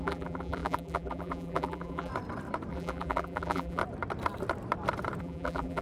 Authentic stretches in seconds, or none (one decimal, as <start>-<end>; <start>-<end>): 2.1-2.7; 3.8-5.2